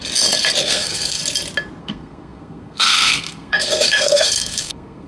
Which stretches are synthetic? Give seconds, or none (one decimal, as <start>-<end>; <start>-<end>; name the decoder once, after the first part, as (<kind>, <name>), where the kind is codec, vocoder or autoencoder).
0.6-1.2 (codec, SNAC); 1.8-5.1